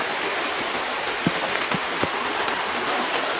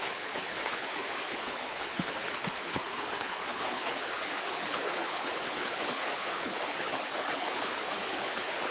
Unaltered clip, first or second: first